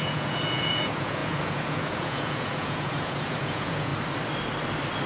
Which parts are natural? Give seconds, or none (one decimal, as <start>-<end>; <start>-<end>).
3.9-5.1